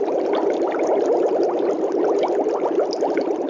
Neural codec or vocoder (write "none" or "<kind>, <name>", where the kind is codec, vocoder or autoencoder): none